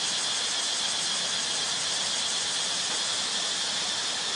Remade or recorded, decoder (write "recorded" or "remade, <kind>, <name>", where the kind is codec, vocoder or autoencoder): recorded